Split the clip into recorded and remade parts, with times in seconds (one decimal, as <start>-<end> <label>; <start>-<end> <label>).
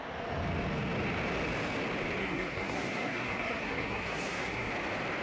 0.0-2.2 recorded; 2.2-4.7 remade; 4.7-5.2 recorded